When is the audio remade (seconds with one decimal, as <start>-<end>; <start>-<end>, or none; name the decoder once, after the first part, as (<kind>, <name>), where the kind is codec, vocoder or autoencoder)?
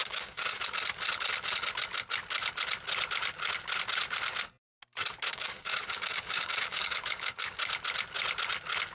0.0-0.6 (codec, DAC); 5.3-7.6